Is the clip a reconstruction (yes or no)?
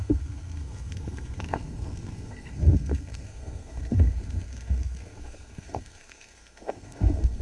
yes